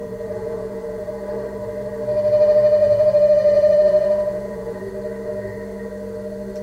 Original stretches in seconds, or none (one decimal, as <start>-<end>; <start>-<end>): 1.1-2.8; 4.9-6.6